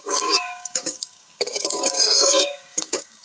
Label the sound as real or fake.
fake